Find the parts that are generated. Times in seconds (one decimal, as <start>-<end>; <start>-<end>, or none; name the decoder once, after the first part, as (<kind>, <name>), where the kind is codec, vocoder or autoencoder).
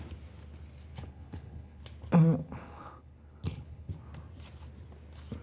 0.9-1.8 (codec, HILCodec); 2.4-3.9